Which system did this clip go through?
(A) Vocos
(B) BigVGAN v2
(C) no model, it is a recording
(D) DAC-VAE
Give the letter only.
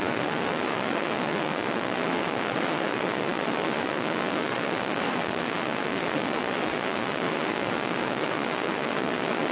A